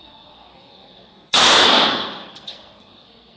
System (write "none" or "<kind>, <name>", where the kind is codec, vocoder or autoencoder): codec, SNAC